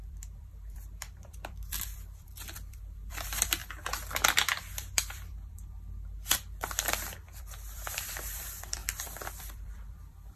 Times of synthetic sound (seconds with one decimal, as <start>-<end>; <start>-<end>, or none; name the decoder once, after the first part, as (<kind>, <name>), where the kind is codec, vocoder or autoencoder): 0.0-3.6 (vocoder, BigVGAN v2); 4.7-10.4